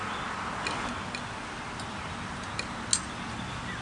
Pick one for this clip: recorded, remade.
recorded